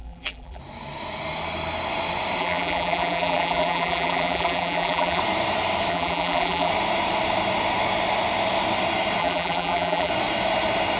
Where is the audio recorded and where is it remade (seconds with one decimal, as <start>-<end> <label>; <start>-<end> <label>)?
0.0-0.6 remade; 0.6-2.4 recorded; 2.4-5.2 remade; 5.2-5.9 recorded; 5.9-6.7 remade; 6.7-9.2 recorded; 9.2-10.1 remade; 10.1-11.0 recorded